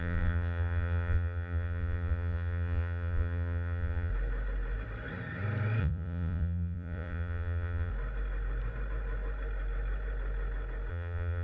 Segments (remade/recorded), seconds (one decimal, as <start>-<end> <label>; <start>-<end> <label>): 0.0-4.1 remade; 4.1-5.8 recorded; 5.8-7.9 remade; 7.9-10.9 recorded; 10.9-11.4 remade